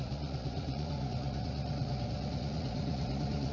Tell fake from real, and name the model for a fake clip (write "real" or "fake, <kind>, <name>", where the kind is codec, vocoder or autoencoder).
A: fake, vocoder, Vocos